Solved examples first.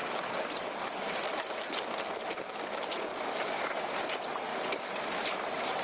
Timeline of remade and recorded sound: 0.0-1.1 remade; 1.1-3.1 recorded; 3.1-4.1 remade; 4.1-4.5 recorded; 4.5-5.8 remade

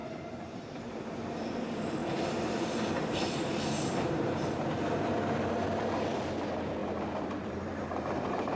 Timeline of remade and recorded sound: 0.0-1.5 remade; 1.5-2.0 recorded; 2.0-6.2 remade; 6.2-6.8 recorded; 6.8-8.6 remade